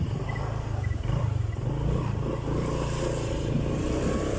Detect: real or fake real